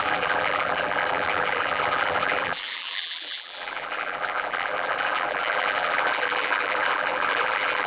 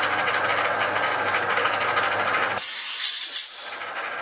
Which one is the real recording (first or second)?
second